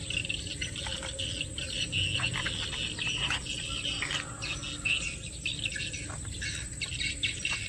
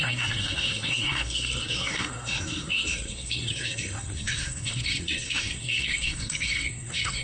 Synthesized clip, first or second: second